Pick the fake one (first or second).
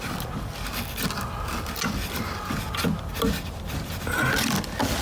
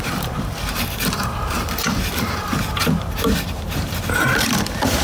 second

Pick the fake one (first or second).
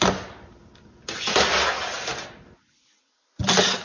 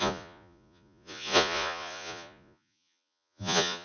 second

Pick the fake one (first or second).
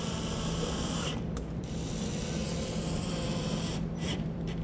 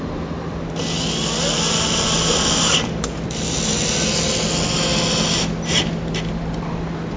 first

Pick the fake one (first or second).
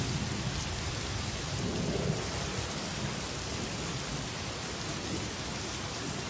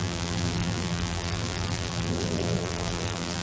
second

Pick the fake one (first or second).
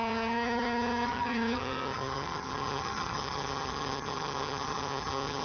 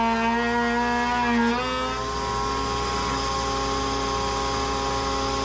first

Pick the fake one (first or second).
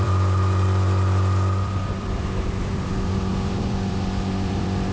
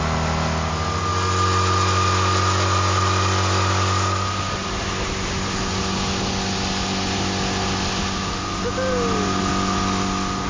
first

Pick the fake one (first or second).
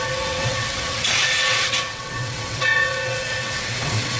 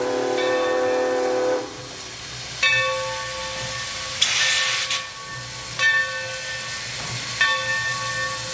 first